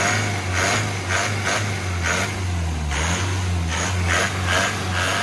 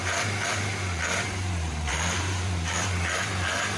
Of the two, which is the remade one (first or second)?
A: second